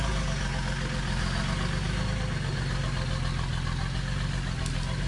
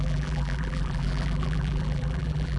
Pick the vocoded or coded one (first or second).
second